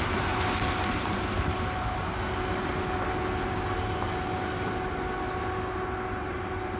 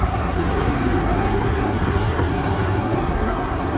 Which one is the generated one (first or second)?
second